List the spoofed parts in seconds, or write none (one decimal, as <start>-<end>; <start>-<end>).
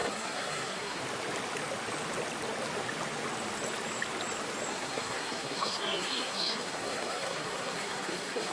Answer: 0.0-1.0; 4.7-8.5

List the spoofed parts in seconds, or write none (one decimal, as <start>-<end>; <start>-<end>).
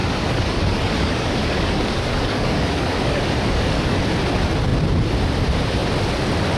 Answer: 0.0-4.0